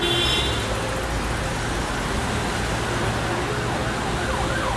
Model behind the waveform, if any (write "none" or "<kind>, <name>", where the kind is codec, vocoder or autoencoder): none